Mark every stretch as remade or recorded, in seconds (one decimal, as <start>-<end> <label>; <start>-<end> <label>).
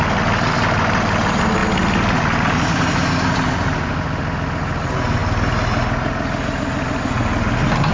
0.0-7.9 recorded